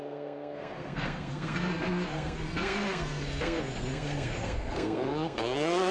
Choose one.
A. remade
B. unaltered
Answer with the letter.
A